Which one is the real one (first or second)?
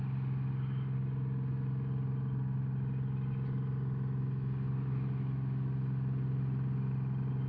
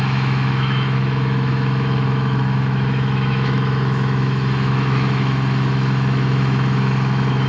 first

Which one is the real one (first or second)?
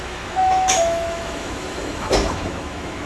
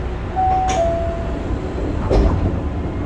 second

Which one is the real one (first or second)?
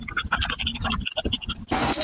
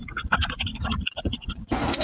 first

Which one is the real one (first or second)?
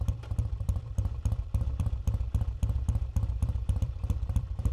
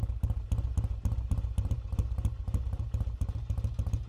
second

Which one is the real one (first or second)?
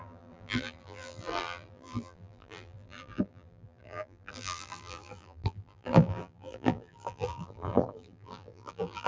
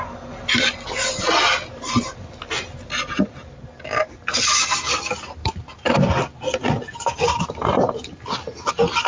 second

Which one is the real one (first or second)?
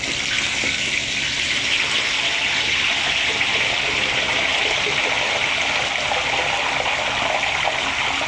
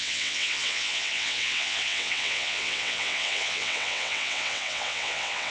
first